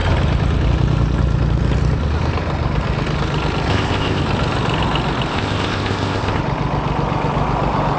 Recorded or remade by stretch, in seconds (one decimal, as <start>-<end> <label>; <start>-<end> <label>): 0.0-3.7 recorded; 3.7-4.2 remade; 4.2-5.3 recorded; 5.3-6.4 remade; 6.4-8.0 recorded

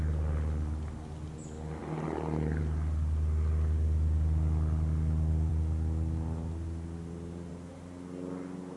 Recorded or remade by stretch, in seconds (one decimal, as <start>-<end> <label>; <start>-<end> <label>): 0.0-1.8 recorded; 1.8-2.6 remade; 2.6-8.8 recorded

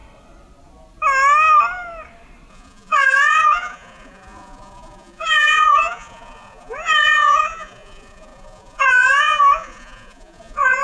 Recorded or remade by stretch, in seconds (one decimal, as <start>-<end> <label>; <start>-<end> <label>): 0.0-2.5 recorded; 2.5-10.8 remade

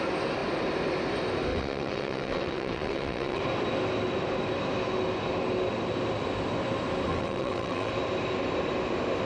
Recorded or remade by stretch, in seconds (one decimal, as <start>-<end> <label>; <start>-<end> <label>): 0.0-1.5 recorded; 1.5-3.4 remade; 3.4-7.1 recorded; 7.1-7.9 remade; 7.9-9.3 recorded

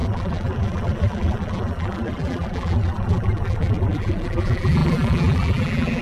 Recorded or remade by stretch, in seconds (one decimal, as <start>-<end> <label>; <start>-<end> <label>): 0.0-6.0 remade

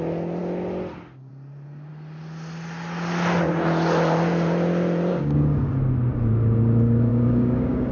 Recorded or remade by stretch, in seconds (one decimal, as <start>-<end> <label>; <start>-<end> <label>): 0.0-5.1 recorded; 5.1-5.7 remade; 5.7-7.1 recorded; 7.1-7.9 remade

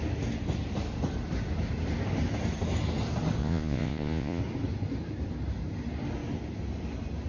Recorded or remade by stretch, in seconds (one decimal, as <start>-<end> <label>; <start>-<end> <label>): 0.0-3.4 recorded; 3.4-4.4 remade; 4.4-7.3 recorded